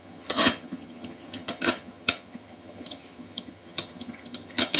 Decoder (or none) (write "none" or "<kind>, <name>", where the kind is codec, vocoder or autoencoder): vocoder, HiFi-GAN